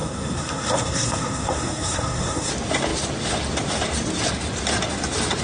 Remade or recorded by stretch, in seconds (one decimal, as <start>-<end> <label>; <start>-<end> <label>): 0.0-2.5 remade; 2.5-5.4 recorded